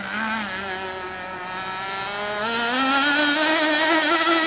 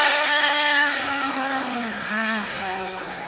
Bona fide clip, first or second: first